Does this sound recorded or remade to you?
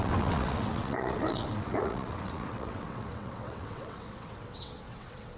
remade